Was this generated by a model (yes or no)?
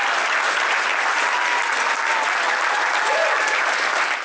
no